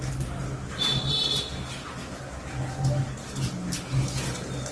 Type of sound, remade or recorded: recorded